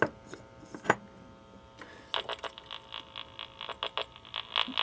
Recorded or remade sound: recorded